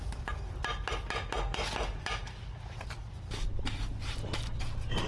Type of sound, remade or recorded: recorded